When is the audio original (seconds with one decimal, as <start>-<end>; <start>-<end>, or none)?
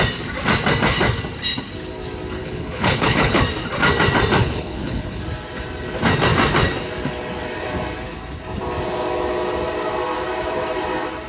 0.0-2.4; 3.4-4.4; 5.2-11.3